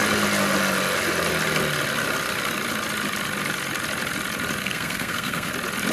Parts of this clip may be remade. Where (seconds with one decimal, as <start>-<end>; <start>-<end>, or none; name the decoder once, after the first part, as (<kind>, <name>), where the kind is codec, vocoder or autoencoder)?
4.6-5.5 (codec, SNAC)